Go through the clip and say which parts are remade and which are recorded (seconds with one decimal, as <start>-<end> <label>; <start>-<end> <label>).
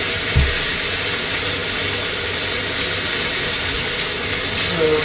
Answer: 0.0-5.0 recorded